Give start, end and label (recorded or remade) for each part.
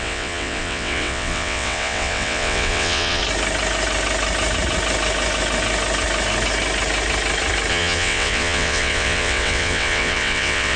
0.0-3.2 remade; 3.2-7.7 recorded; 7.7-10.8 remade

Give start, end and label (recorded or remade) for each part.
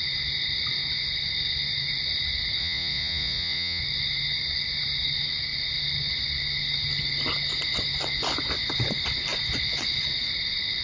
0.0-2.6 recorded; 2.6-3.8 remade; 3.8-10.8 recorded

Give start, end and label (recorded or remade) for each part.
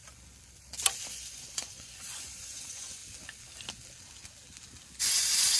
0.0-1.1 recorded; 1.1-3.0 remade; 3.0-5.0 recorded; 5.0-5.6 remade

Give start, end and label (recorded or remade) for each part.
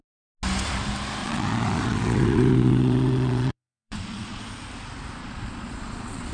0.0-1.2 recorded; 1.2-4.4 remade; 4.4-5.2 recorded; 5.2-6.3 remade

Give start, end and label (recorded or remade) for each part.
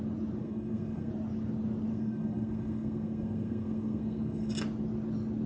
0.0-0.4 recorded; 0.4-1.1 remade; 1.1-1.9 recorded; 1.9-4.5 remade; 4.5-5.5 recorded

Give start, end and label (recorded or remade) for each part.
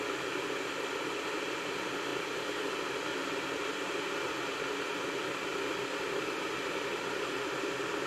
0.0-8.1 recorded